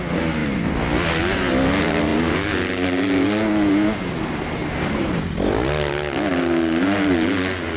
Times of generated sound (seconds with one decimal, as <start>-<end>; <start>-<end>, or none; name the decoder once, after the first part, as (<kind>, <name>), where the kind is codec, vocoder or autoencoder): none